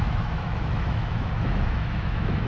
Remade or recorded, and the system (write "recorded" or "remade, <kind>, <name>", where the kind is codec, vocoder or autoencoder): remade, autoencoder, DAC-VAE